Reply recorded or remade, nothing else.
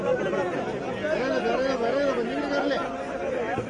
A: recorded